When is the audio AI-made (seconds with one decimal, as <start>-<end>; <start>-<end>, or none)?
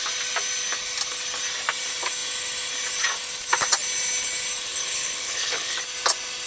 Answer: 4.7-5.8